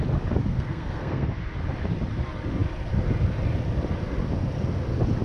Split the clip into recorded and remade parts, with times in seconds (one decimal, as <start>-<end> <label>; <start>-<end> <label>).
0.0-0.5 recorded; 0.5-1.3 remade; 1.3-5.2 recorded